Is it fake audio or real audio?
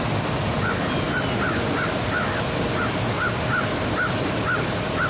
real